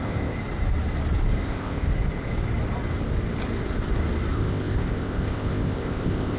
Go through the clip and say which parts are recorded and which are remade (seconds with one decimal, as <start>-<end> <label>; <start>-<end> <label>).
0.0-0.4 remade; 0.4-1.4 recorded; 1.4-1.9 remade; 1.9-4.3 recorded; 4.3-6.4 remade